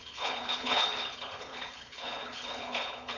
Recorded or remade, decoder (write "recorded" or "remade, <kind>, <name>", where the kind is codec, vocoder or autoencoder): remade, codec, HILCodec